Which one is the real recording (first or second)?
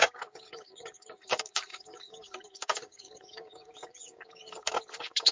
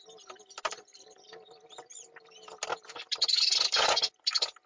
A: second